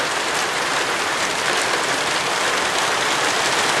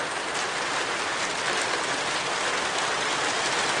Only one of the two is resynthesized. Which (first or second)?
first